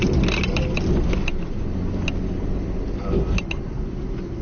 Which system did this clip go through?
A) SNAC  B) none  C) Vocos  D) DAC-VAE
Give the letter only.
B